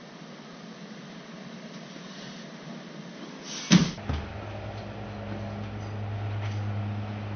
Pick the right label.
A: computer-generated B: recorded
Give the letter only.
B